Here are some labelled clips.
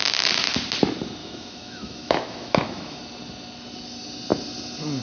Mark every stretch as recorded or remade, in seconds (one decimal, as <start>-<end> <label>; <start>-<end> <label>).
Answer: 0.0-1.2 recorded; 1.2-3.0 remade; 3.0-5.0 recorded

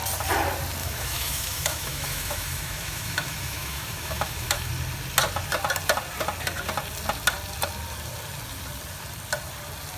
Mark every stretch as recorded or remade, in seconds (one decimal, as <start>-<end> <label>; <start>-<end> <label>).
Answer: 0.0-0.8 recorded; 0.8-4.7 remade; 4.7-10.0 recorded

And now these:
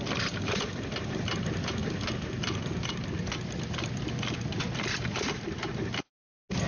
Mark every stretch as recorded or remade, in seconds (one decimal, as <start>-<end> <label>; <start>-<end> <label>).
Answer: 0.0-6.7 recorded

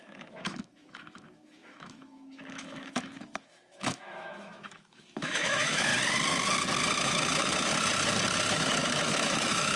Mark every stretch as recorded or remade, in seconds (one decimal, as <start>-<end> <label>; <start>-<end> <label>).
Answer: 0.0-5.9 remade; 5.9-6.9 recorded; 6.9-7.7 remade; 7.7-8.5 recorded; 8.5-9.8 remade